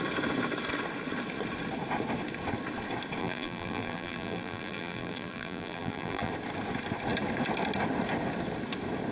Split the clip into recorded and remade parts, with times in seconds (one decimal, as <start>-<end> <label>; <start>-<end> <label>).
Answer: 0.0-3.2 recorded; 3.2-6.3 remade; 6.3-9.1 recorded